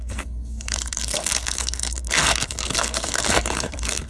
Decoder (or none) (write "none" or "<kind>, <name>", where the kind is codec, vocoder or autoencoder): codec, SNAC